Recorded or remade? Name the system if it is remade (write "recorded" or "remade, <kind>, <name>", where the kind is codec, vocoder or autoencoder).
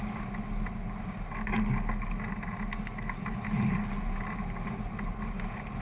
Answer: recorded